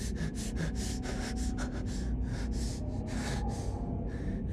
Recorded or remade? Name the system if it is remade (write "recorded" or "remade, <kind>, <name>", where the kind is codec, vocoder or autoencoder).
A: recorded